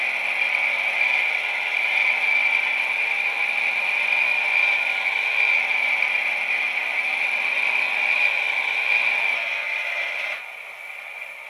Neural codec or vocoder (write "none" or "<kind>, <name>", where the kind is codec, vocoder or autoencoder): none